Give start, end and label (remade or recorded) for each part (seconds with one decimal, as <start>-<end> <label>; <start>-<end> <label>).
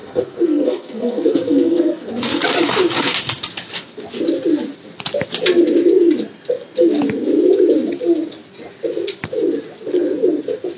0.0-2.1 remade; 2.1-10.8 recorded